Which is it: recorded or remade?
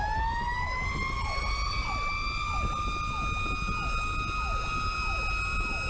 recorded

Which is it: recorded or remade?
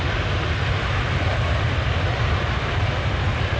recorded